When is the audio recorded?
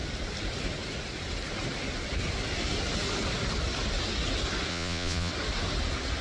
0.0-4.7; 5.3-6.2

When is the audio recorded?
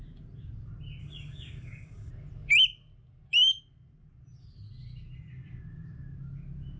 0.0-1.0; 2.1-6.8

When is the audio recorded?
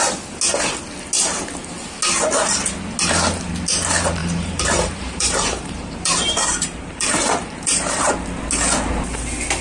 0.0-4.2; 8.1-9.6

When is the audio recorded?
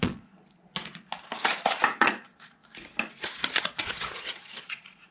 0.4-2.0; 2.6-3.6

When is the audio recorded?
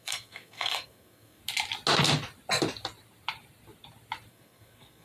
1.4-4.3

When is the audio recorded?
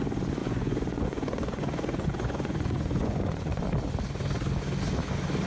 0.0-0.4; 3.6-5.5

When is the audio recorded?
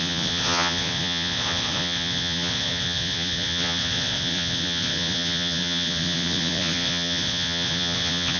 none